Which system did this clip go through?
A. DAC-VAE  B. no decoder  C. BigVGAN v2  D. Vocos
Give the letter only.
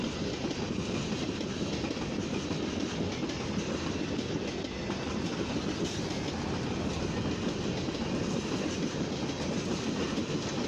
B